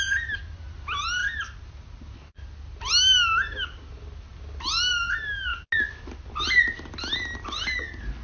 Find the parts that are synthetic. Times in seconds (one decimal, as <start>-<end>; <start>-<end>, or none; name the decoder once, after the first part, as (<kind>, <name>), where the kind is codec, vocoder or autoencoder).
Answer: none